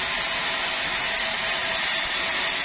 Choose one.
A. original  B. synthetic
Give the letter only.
A